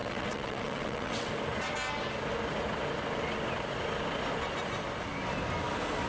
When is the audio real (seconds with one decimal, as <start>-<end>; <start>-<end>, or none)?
1.3-6.1